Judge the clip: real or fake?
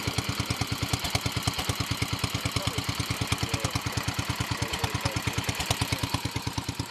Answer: real